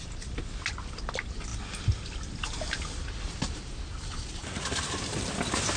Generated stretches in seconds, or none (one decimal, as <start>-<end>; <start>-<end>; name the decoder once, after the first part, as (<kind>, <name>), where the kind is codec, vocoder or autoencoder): none